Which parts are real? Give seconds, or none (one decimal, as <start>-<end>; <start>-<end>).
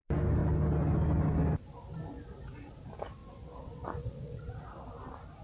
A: 0.0-3.2; 4.6-5.4